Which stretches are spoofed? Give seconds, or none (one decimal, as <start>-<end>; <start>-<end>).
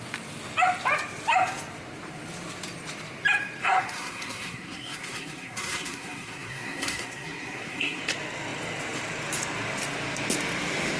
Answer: 3.6-8.0